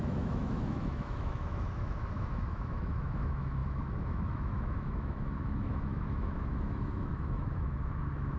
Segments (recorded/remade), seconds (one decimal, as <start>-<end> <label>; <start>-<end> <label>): 0.0-8.4 remade